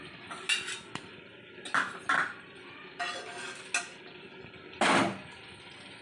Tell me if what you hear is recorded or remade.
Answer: recorded